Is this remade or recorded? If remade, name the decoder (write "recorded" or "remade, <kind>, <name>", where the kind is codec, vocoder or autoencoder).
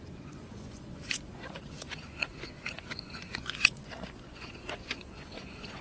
remade, vocoder, Vocos